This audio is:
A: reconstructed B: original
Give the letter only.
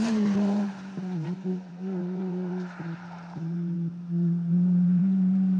A